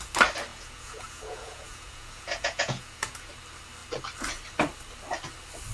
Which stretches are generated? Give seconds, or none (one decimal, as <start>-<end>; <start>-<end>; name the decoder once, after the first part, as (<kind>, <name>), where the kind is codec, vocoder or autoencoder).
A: 0.5-3.3 (vocoder, Vocos)